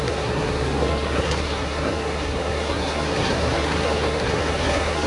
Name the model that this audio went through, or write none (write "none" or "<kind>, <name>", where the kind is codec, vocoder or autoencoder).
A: codec, SNAC